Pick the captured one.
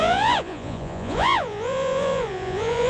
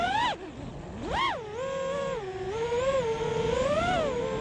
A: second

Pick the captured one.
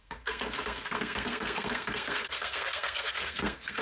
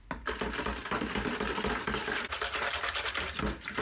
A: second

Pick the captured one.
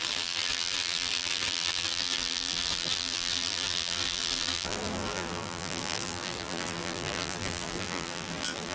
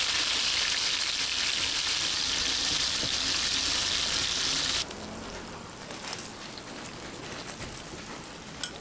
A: second